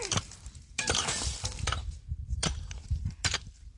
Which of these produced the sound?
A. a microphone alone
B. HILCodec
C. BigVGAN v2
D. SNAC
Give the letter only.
C